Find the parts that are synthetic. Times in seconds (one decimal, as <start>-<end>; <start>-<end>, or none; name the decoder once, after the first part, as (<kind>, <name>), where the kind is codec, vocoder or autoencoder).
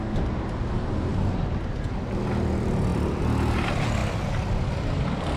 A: none